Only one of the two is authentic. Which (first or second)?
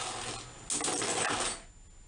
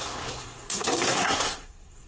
first